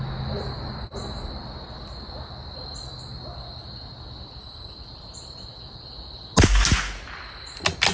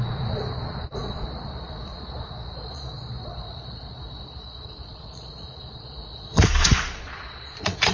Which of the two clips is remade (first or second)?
second